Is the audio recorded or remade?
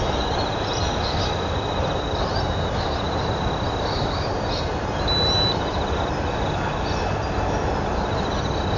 recorded